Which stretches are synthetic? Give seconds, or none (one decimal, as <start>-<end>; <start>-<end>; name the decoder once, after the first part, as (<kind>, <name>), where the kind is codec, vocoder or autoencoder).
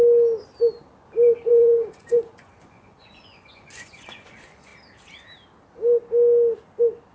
1.5-4.7 (vocoder, Vocos)